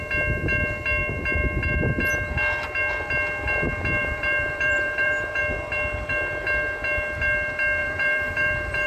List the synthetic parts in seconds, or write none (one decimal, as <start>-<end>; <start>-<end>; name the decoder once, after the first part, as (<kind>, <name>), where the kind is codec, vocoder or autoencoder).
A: 4.0-5.4 (vocoder, BigVGAN v2); 7.8-8.9